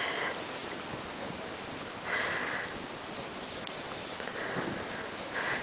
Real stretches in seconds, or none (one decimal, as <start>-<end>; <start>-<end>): 0.0-5.6